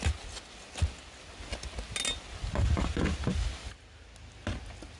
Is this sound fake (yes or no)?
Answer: no